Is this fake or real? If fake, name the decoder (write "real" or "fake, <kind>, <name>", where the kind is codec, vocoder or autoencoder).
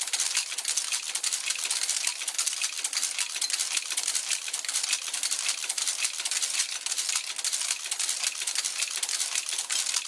real